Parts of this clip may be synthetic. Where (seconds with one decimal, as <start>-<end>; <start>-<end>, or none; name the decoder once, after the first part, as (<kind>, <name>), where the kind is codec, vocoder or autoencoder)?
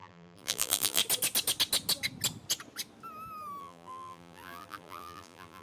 0.0-1.0 (vocoder, BigVGAN v2); 3.6-5.6